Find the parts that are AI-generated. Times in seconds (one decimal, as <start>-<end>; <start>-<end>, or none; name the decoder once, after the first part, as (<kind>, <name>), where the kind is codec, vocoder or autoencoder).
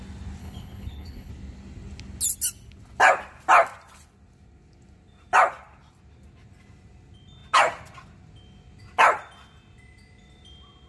0.4-1.3 (codec, HILCodec)